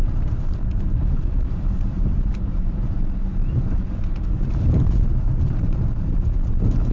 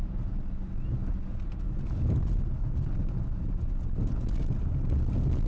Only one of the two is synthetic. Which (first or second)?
first